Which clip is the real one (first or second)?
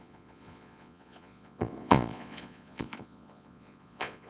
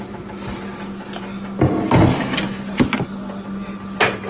second